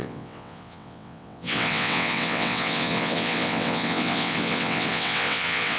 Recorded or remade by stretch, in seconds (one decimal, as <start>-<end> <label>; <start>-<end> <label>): 0.0-5.8 remade